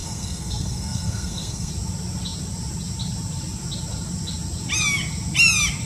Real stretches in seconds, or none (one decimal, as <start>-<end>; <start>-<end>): 1.7-5.9